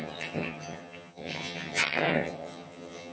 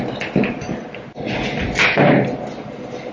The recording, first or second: second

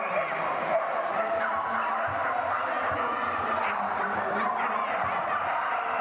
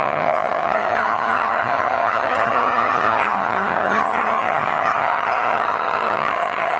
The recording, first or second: first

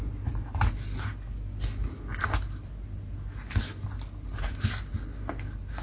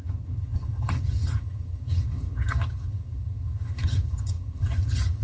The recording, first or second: first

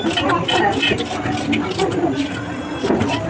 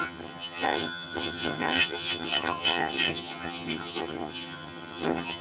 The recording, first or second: first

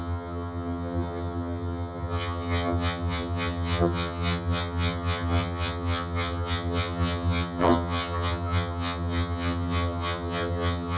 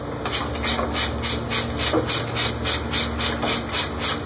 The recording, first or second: second